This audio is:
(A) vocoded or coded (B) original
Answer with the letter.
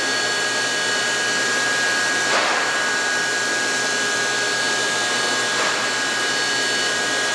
B